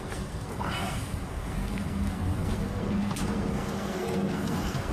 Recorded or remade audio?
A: remade